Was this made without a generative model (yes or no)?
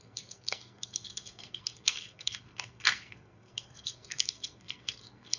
no